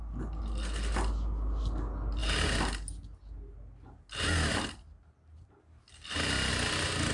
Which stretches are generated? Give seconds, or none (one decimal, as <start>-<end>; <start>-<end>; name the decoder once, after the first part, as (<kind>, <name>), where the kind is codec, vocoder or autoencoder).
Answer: none